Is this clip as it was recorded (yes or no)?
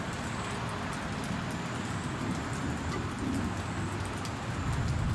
yes